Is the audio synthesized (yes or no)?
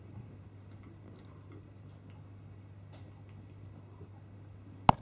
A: no